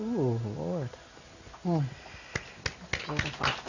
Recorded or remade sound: recorded